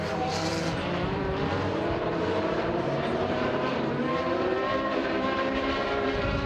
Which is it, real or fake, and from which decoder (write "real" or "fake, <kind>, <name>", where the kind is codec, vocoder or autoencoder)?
fake, vocoder, BigVGAN v2